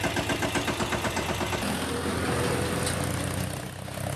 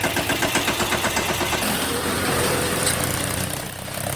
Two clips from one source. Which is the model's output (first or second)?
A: second